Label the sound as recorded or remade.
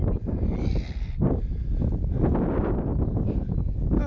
recorded